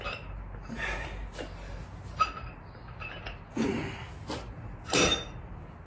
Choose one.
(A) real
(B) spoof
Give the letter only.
A